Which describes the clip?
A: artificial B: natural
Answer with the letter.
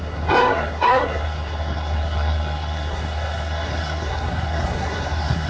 A